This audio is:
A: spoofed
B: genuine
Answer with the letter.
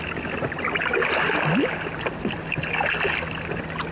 B